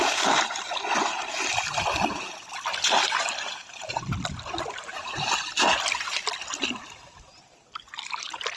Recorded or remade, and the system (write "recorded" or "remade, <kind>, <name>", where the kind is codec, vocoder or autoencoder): recorded